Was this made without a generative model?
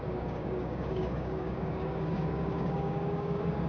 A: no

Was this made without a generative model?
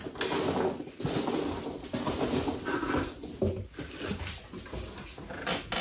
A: yes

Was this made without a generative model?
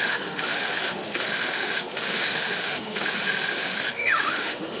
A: no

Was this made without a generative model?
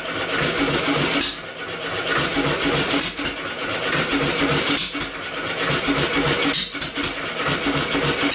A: yes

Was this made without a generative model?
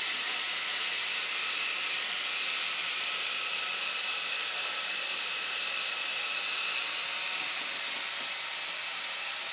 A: no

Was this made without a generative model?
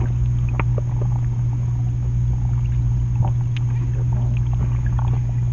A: yes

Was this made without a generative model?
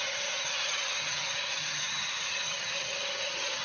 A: no